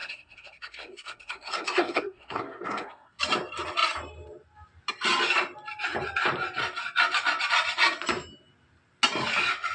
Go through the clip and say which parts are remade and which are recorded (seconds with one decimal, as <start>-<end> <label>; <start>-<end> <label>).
0.0-3.2 remade; 3.2-9.7 recorded